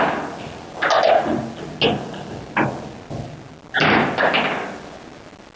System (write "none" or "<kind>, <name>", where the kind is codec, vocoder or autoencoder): none